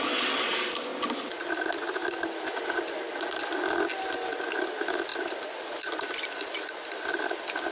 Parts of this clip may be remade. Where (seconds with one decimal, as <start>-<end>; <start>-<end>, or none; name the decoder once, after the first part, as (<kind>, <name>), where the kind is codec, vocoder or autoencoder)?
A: none